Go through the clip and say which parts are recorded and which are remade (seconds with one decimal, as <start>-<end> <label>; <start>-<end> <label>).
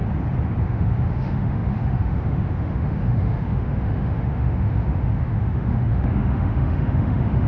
0.0-0.6 recorded; 0.6-7.5 remade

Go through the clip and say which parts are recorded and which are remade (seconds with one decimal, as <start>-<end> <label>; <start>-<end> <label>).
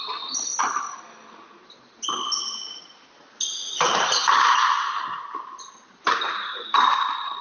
0.0-7.4 recorded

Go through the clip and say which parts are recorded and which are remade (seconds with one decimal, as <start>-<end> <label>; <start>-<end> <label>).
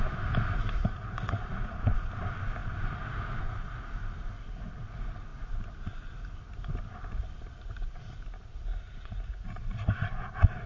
0.0-0.8 recorded; 0.8-2.1 remade; 2.1-8.7 recorded; 8.7-10.2 remade; 10.2-10.7 recorded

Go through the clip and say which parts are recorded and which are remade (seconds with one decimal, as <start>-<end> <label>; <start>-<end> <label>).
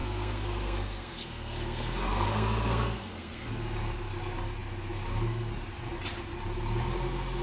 0.0-3.5 remade; 3.5-7.4 recorded